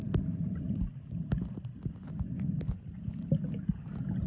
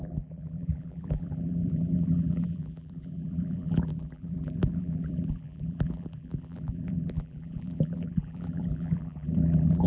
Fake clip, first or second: second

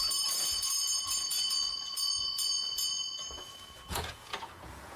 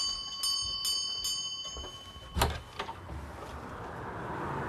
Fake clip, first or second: first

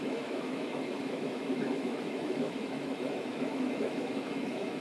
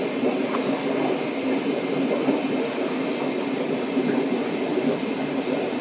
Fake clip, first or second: first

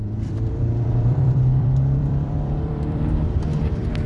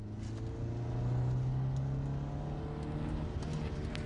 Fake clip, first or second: first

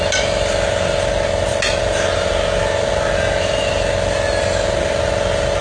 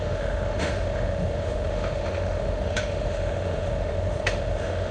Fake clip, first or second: second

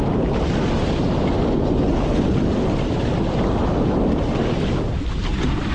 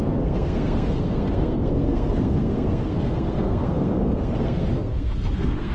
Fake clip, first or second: second